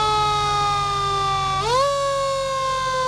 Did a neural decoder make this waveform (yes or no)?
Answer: no